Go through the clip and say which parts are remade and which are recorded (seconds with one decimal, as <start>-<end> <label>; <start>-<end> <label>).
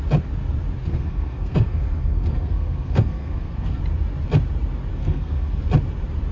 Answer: 0.0-0.8 recorded; 0.8-3.8 remade; 3.8-5.0 recorded; 5.0-5.6 remade; 5.6-6.3 recorded